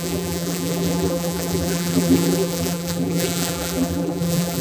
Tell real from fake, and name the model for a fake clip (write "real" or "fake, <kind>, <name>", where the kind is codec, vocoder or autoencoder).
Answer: fake, vocoder, BigVGAN v2